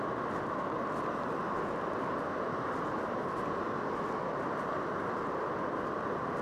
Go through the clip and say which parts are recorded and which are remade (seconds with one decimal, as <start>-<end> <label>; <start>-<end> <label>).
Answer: 0.0-6.4 recorded